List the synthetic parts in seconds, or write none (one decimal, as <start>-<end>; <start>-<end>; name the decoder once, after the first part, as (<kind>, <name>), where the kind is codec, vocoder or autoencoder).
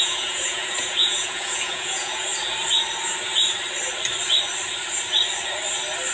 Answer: 0.0-2.3 (vocoder, Vocos)